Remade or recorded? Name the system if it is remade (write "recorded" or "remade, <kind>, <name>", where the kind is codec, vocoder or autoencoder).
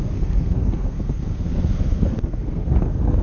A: remade, codec, SNAC